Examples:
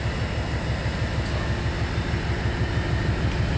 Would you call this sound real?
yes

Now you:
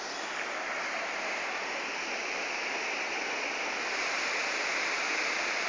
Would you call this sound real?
yes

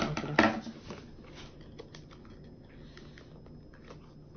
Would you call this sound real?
yes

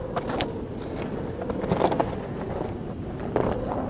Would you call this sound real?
yes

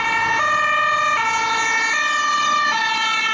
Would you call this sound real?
yes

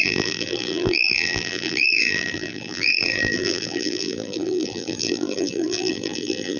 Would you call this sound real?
no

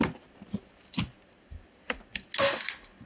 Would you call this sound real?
yes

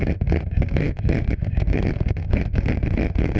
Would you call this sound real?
no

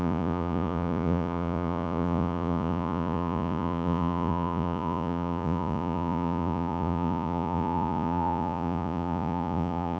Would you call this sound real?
no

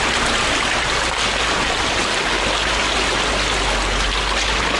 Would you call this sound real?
yes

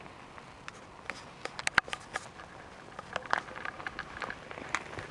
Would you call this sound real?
yes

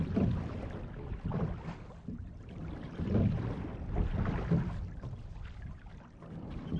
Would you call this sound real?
yes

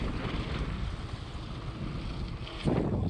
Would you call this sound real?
yes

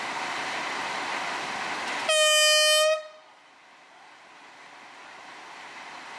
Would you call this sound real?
yes